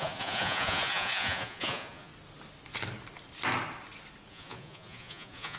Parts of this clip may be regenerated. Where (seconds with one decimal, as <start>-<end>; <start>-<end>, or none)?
0.0-2.1; 4.3-5.6